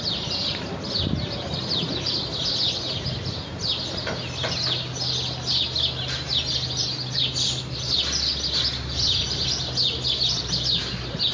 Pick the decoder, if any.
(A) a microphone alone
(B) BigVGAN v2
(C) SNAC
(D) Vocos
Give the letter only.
A